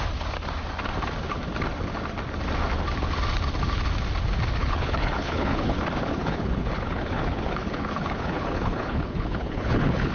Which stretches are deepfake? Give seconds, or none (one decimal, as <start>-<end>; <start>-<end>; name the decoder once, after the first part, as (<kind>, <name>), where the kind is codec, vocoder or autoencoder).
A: 4.6-5.8 (codec, HILCodec); 6.2-10.1